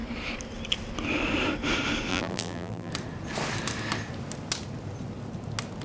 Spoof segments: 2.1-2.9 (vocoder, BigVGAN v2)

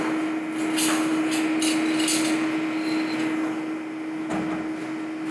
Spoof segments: none

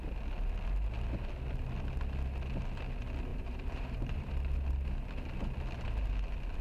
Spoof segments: 3.3-4.3 (vocoder, BigVGAN v2)

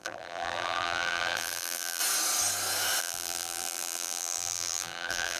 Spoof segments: 0.0-2.0 (vocoder, BigVGAN v2); 3.0-5.4

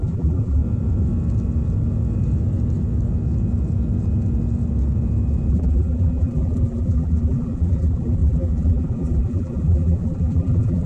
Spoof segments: 0.0-0.6 (vocoder, BigVGAN v2); 5.5-10.9

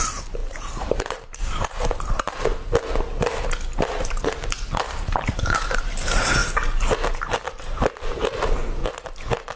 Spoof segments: 0.0-2.5 (vocoder, BigVGAN v2); 4.0-6.4; 8.0-8.8

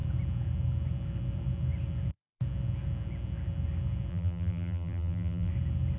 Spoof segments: 4.1-5.5 (vocoder, BigVGAN v2)